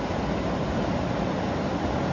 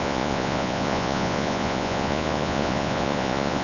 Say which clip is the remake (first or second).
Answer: second